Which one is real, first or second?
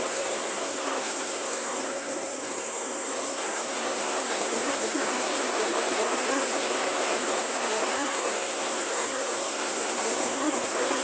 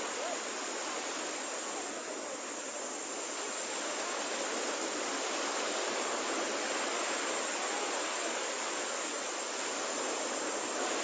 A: second